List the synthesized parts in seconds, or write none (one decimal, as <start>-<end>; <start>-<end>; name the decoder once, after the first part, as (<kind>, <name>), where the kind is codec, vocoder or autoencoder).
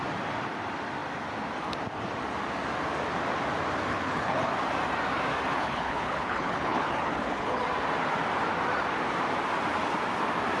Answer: 3.9-4.5 (codec, HILCodec); 5.5-7.6